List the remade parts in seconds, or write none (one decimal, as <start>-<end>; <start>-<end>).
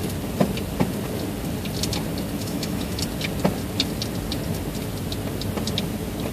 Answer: 2.4-3.0